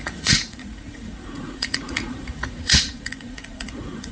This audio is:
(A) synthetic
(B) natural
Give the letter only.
A